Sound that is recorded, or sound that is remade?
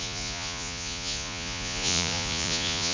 remade